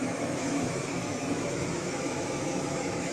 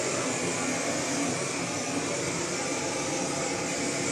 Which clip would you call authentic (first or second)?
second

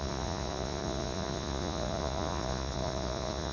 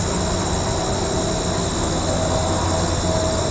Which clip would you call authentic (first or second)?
second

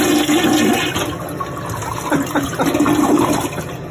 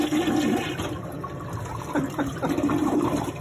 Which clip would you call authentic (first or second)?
first